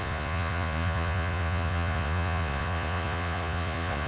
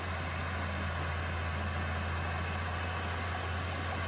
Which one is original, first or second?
second